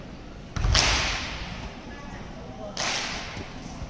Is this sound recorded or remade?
recorded